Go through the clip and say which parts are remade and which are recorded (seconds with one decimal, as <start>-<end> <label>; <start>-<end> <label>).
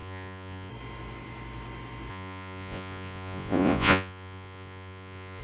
0.0-0.7 remade; 0.7-2.1 recorded; 2.1-5.4 remade